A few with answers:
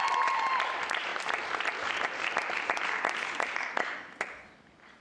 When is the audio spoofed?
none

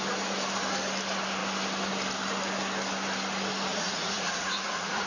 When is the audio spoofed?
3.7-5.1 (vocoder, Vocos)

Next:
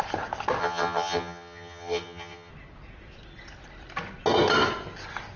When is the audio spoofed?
0.6-2.5 (vocoder, HiFi-GAN)

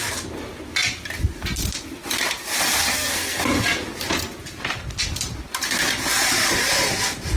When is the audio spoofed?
2.9-3.4 (codec, SNAC)

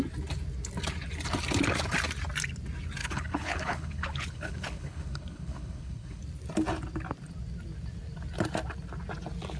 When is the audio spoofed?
3.0-6.2 (codec, HILCodec)

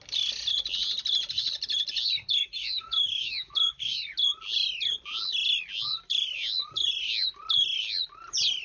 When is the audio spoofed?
2.4-4.0 (autoencoder, DAC-VAE)

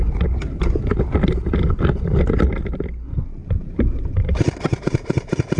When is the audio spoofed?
3.4-4.6 (vocoder, BigVGAN v2)

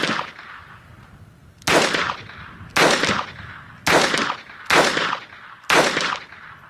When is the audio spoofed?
none